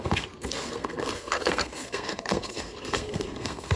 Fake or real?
fake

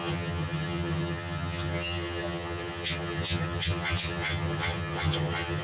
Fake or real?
fake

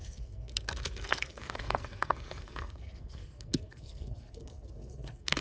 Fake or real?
fake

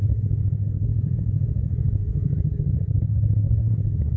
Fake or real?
fake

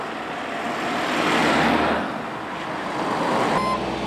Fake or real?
real